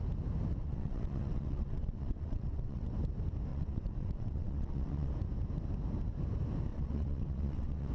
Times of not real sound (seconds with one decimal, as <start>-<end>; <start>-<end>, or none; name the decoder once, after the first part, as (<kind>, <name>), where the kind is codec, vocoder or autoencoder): 0.6-2.9 (vocoder, WaveNeXt); 3.5-5.1; 6.7-7.9